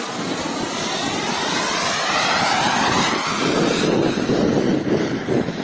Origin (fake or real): fake